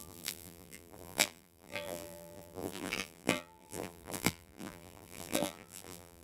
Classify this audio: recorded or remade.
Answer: remade